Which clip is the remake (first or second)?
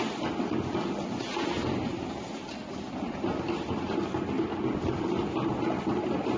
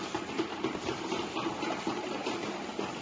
second